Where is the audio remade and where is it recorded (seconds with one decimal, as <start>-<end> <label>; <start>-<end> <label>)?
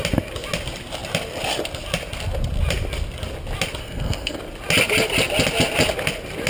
0.0-3.8 recorded; 3.8-4.4 remade; 4.4-6.5 recorded